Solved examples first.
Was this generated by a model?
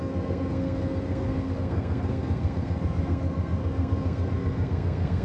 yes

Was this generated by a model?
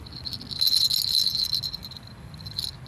no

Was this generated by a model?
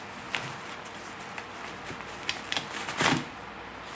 no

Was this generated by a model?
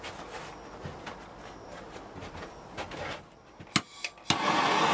no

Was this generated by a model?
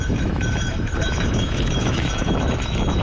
yes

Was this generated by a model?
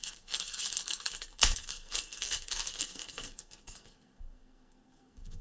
yes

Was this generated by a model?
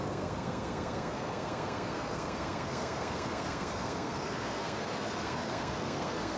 yes